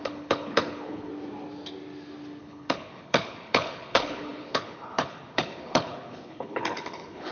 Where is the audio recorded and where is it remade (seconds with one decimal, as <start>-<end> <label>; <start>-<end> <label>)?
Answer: 0.0-1.1 remade; 1.1-2.4 recorded; 2.4-7.3 remade